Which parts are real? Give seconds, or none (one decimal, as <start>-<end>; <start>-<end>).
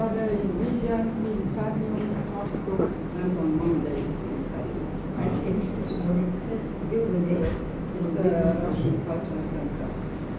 1.2-1.8; 2.2-5.4; 8.6-10.4